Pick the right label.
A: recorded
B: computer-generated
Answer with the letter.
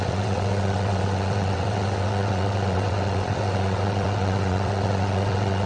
B